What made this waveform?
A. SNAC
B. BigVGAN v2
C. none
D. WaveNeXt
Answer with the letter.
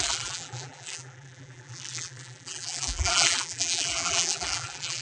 B